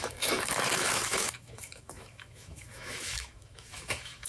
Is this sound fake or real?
fake